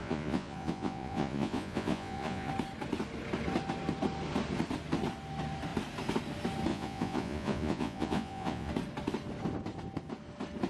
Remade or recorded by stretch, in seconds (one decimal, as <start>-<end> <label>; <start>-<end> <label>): 0.0-2.5 remade; 2.5-6.7 recorded; 6.7-8.7 remade; 8.7-10.7 recorded